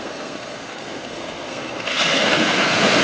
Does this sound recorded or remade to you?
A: remade